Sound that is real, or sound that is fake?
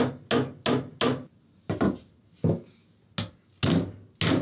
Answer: real